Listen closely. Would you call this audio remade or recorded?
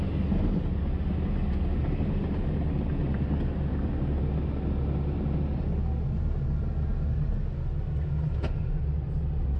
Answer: recorded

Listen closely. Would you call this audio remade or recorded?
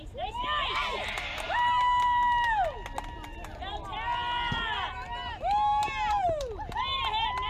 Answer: recorded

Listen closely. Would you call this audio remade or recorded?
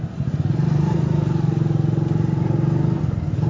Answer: recorded